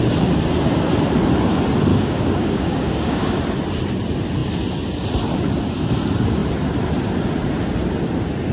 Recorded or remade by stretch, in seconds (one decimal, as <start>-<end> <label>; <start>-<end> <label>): 0.0-1.9 recorded; 1.9-3.4 remade; 3.4-8.5 recorded